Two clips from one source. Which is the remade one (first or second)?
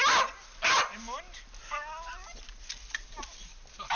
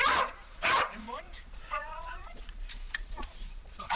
second